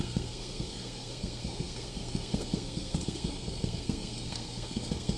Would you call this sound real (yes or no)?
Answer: no